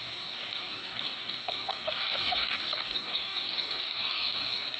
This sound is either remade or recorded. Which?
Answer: remade